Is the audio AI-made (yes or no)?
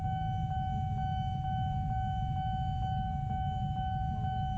no